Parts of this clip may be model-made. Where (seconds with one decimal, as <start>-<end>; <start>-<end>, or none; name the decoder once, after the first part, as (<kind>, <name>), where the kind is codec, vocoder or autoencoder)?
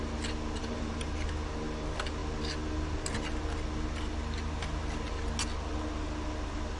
0.6-1.1 (vocoder, BigVGAN v2)